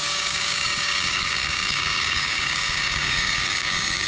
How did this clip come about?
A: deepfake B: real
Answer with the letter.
A